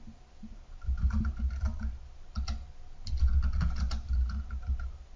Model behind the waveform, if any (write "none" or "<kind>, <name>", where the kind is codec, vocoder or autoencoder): none